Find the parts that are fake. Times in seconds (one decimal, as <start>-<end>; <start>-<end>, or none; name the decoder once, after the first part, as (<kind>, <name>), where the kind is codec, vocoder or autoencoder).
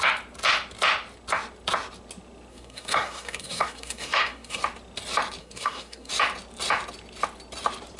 2.5-4.6 (codec, SNAC); 5.4-6.1